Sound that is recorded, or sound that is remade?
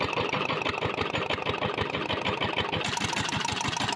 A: recorded